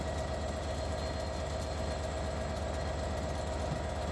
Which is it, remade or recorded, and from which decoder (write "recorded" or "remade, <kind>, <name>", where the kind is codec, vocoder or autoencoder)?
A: recorded